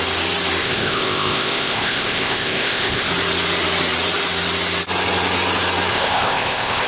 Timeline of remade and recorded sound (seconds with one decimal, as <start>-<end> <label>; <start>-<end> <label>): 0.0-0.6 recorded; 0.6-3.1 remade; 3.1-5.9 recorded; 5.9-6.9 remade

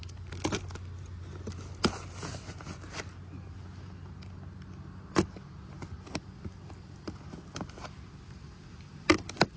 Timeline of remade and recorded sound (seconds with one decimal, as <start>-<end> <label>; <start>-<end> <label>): 0.0-9.6 recorded

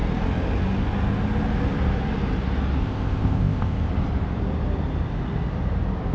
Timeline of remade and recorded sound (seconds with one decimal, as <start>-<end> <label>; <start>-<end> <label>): 0.0-2.8 recorded; 2.8-3.9 remade; 3.9-6.1 recorded